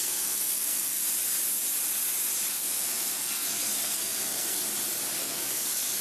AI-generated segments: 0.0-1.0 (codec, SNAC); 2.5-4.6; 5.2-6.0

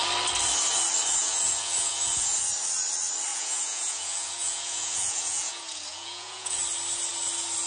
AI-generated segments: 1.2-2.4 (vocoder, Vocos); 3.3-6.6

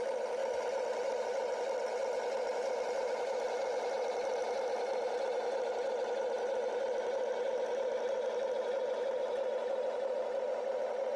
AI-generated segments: none